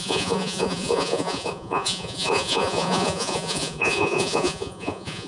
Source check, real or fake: fake